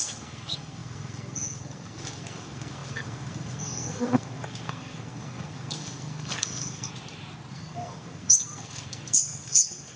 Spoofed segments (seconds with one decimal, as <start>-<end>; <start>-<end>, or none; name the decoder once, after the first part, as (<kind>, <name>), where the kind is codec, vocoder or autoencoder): 0.0-6.9 (codec, SNAC); 7.5-10.0